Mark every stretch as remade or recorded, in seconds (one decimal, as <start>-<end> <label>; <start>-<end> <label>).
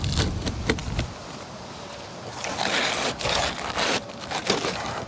0.0-5.1 recorded